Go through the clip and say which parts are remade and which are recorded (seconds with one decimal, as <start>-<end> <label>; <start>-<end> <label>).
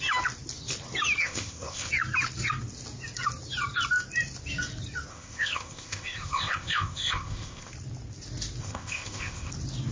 0.0-1.2 recorded; 1.2-1.9 remade; 1.9-5.1 recorded; 5.1-7.7 remade; 7.7-8.6 recorded; 8.6-9.5 remade; 9.5-9.9 recorded